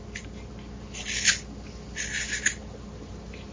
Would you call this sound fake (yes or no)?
no